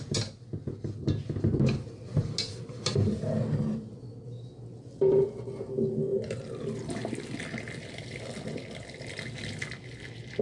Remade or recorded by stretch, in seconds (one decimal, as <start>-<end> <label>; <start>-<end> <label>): 0.0-10.4 recorded